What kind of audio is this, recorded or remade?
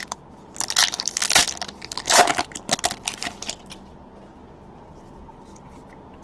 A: recorded